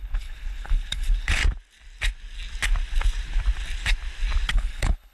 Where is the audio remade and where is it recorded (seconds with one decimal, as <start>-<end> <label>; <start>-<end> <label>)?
0.0-1.4 remade; 1.4-4.5 recorded; 4.5-5.1 remade